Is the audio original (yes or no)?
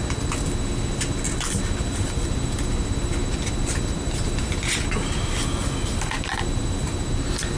yes